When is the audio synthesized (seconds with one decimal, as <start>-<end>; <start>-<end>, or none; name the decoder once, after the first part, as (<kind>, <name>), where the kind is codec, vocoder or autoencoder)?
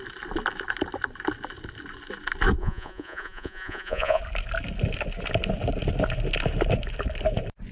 2.6-4.2 (vocoder, Vocos)